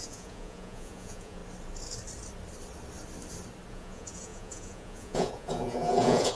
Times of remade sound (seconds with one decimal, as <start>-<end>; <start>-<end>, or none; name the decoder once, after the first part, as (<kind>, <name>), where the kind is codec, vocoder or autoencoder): 0.0-1.4 (vocoder, Vocos); 3.7-6.3